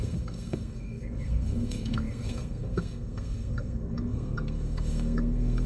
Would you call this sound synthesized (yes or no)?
yes